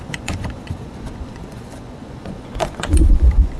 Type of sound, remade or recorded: remade